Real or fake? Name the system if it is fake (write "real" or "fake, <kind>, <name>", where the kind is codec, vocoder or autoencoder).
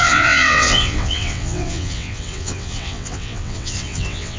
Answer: fake, vocoder, WaveNeXt